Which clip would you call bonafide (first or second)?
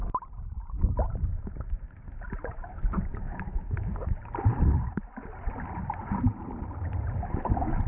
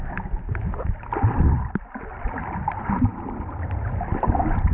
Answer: second